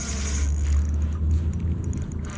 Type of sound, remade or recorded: recorded